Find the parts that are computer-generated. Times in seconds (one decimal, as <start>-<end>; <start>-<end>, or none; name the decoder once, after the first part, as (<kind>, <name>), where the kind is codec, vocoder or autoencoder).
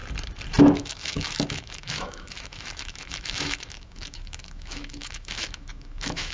0.6-6.3 (autoencoder, DAC-VAE)